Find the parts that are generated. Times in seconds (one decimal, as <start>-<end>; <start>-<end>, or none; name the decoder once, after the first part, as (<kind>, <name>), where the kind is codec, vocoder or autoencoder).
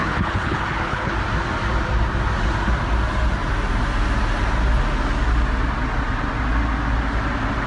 0.0-1.1 (codec, HILCodec)